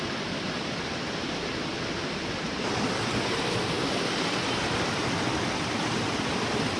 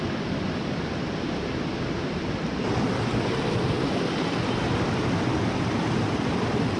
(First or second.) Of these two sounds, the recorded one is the second